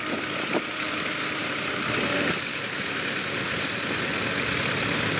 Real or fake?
real